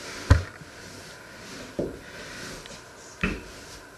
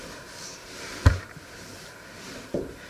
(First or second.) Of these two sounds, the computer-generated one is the second